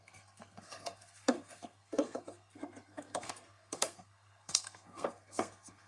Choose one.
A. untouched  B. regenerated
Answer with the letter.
B